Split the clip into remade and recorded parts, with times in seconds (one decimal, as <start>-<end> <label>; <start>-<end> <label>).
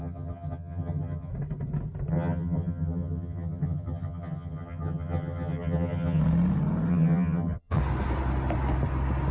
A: 0.0-1.3 remade; 1.3-2.1 recorded; 2.1-6.2 remade; 6.2-6.9 recorded; 6.9-7.8 remade; 7.8-9.3 recorded